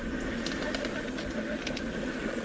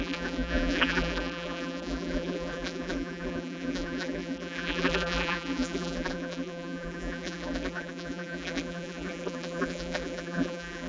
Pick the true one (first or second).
first